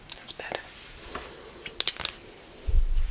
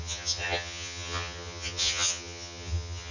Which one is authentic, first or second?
first